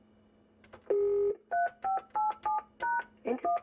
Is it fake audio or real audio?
real